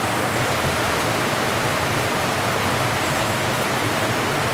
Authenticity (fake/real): real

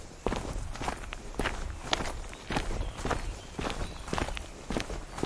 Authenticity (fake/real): real